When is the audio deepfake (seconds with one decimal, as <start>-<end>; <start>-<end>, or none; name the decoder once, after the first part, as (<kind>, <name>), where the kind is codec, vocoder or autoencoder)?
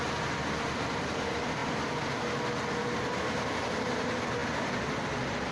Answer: none